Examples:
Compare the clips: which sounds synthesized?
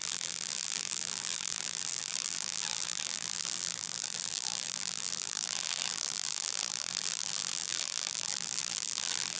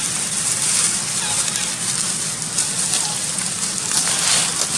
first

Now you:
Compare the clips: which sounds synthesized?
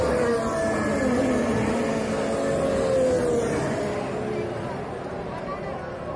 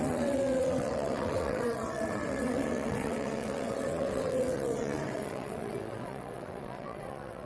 second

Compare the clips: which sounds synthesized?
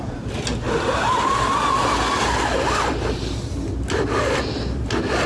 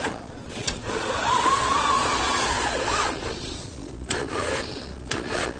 second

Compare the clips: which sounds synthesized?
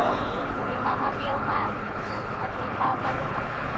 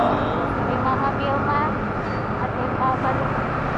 first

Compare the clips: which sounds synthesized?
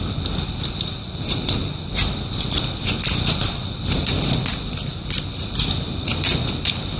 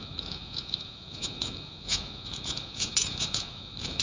second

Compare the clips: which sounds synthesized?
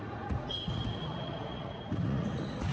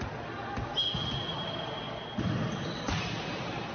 first